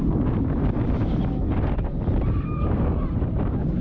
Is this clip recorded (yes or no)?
yes